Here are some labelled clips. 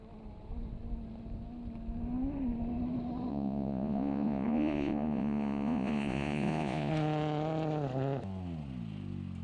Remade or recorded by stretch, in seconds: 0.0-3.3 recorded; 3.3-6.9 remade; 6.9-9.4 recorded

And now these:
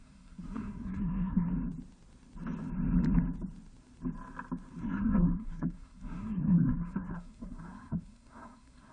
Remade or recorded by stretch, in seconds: 0.0-1.5 remade; 1.5-4.8 recorded; 4.8-8.9 remade

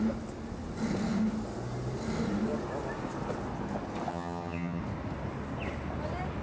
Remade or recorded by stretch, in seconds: 0.0-4.1 recorded; 4.1-4.8 remade; 4.8-6.4 recorded

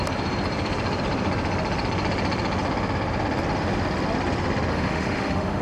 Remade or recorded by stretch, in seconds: 0.0-4.7 recorded; 4.7-5.6 remade

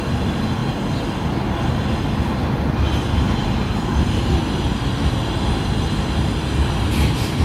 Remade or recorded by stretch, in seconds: 0.0-7.4 recorded

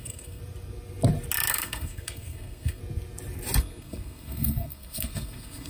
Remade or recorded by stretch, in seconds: 0.0-0.4 remade; 0.4-1.5 recorded; 1.5-2.8 remade; 2.8-3.6 recorded; 3.6-5.7 remade

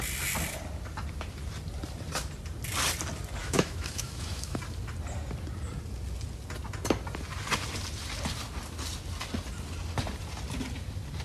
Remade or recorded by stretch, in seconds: 0.0-3.4 recorded; 3.4-4.6 remade; 4.6-11.2 recorded